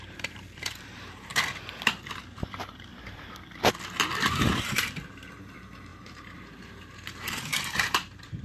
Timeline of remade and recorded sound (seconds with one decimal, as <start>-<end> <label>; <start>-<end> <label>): 0.0-1.3 remade; 1.3-2.2 recorded; 2.2-2.9 remade; 2.9-4.4 recorded; 4.4-8.4 remade